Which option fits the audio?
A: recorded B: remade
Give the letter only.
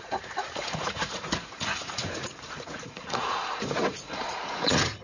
B